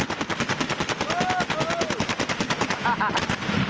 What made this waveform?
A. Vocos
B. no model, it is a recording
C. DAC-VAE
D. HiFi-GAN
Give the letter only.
B